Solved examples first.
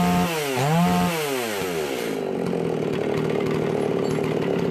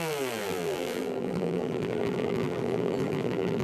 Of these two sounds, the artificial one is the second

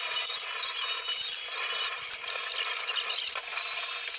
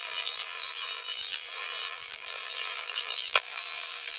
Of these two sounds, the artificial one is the second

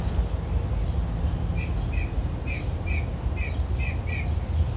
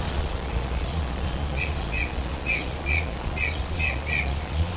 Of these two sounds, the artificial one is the second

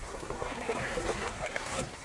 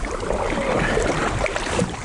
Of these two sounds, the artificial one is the first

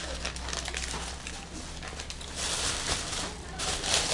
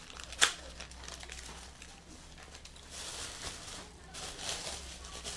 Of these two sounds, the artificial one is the second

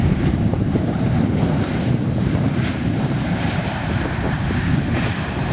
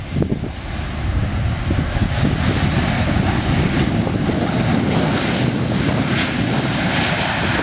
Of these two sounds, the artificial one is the first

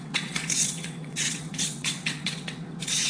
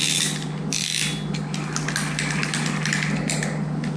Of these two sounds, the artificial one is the first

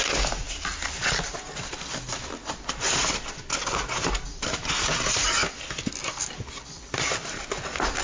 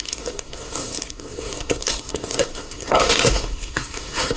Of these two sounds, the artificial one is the second